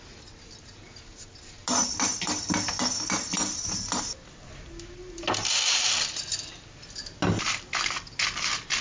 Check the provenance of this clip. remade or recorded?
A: recorded